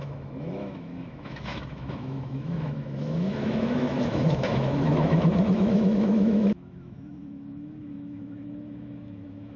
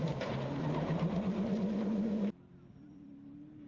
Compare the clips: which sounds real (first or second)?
second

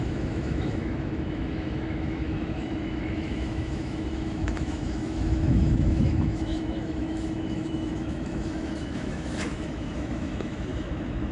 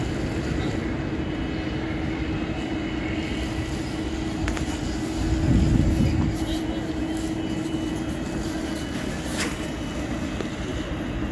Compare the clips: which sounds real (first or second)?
second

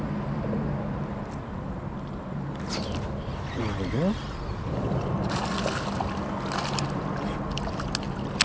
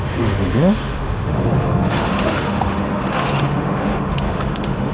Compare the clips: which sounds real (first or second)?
first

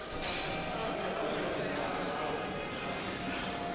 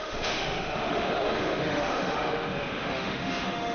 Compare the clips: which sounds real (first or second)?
first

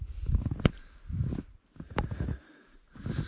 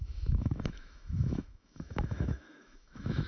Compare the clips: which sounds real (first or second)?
first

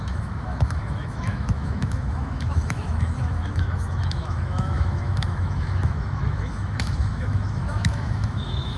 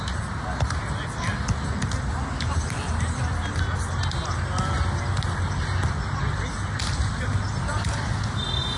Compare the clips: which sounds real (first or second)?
second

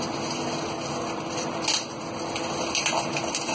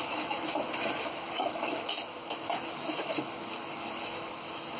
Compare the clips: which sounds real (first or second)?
first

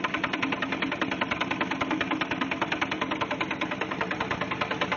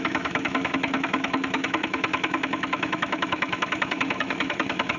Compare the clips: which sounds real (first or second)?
first